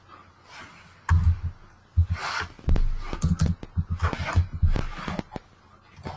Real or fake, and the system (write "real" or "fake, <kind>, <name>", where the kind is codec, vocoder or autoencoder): real